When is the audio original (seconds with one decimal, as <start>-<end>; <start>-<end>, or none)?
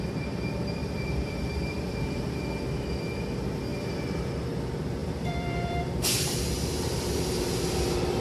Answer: 0.0-0.8; 2.6-3.7; 4.3-5.0; 6.4-8.2